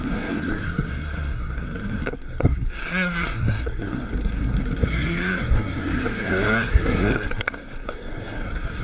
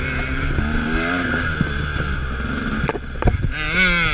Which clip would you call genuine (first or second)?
second